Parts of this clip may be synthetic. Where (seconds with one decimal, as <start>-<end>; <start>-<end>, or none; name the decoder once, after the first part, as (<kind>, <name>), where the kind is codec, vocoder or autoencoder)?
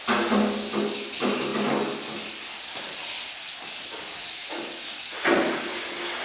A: none